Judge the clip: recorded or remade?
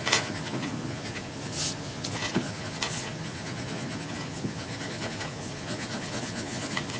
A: remade